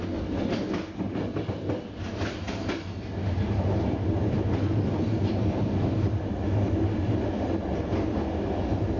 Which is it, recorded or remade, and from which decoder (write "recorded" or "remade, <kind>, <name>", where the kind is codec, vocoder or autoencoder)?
recorded